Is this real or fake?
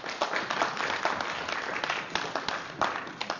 real